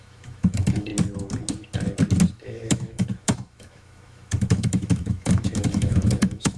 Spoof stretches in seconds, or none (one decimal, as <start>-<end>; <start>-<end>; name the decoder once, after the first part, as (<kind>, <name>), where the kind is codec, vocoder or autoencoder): 0.0-0.9 (autoencoder, DAC-VAE); 2.3-6.6